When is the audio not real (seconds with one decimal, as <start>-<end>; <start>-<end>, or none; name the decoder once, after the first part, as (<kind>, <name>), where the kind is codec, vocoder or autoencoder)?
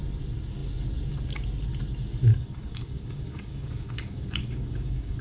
2.3-5.2 (codec, DAC)